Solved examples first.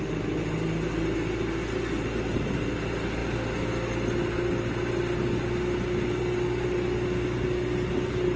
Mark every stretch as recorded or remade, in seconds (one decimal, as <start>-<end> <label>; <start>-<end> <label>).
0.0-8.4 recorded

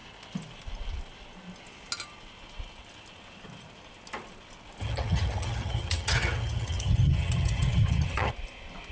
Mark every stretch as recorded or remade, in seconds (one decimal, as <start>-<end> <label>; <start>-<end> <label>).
0.0-4.8 recorded; 4.8-8.3 remade; 8.3-8.9 recorded

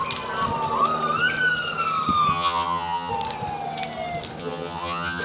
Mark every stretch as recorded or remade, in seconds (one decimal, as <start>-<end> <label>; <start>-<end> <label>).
0.0-2.3 recorded; 2.3-3.1 remade; 3.1-4.4 recorded; 4.4-5.2 remade

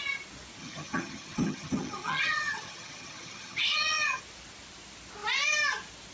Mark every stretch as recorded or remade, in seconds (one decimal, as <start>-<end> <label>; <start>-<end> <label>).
0.0-0.6 recorded; 0.6-4.2 remade; 4.2-6.1 recorded